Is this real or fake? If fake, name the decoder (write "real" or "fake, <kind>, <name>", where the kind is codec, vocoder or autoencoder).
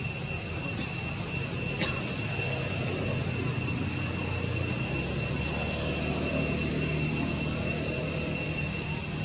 real